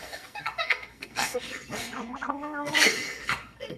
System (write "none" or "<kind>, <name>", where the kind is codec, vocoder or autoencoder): codec, SNAC